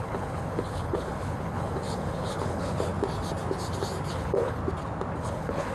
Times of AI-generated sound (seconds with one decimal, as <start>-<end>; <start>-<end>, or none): 0.0-2.9; 4.1-4.6; 5.2-5.7